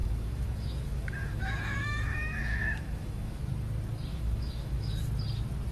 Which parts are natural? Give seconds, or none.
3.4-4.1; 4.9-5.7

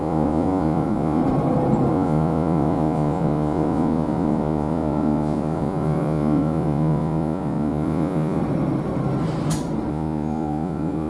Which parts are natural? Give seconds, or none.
1.2-1.9; 8.4-9.9

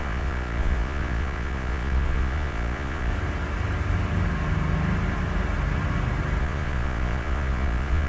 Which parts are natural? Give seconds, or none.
3.1-6.4

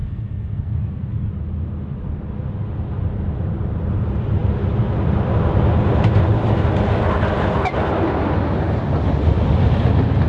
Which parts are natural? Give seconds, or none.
1.3-10.3